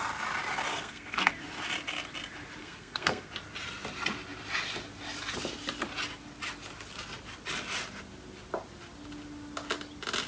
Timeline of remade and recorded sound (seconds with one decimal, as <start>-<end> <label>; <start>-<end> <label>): 0.0-0.7 recorded; 0.7-1.3 remade; 1.3-2.6 recorded; 2.6-3.3 remade; 3.3-10.3 recorded